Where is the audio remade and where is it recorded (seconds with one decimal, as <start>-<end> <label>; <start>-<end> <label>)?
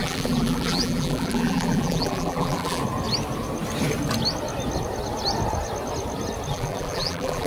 0.0-2.8 remade; 2.8-6.5 recorded; 6.5-7.5 remade